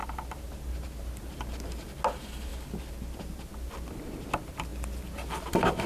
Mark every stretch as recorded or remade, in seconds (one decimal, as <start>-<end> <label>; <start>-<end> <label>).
0.0-5.9 recorded